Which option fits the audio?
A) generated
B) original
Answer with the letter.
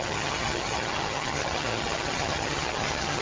A